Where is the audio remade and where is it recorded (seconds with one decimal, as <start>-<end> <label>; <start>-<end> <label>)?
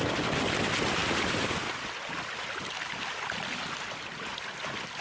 0.0-5.0 recorded